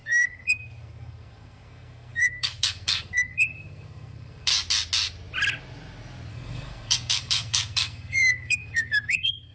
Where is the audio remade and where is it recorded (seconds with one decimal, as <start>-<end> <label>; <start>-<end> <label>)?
0.0-4.5 remade; 4.5-6.3 recorded; 6.3-9.5 remade